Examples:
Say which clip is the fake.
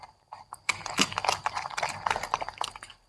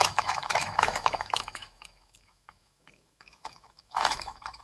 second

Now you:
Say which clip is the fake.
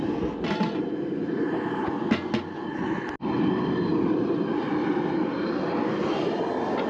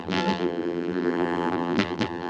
second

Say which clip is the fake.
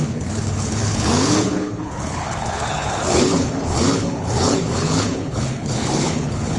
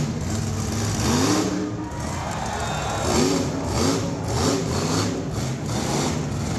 first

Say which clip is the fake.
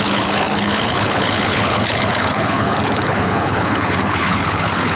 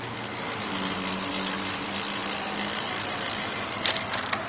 first